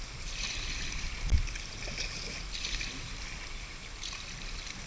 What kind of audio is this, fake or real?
real